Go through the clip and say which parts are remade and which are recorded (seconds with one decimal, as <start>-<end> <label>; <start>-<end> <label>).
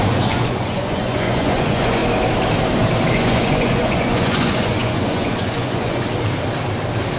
0.0-2.0 remade; 2.0-3.1 recorded; 3.1-6.1 remade; 6.1-7.2 recorded